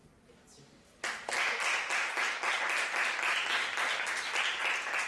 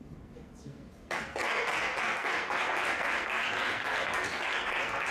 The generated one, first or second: second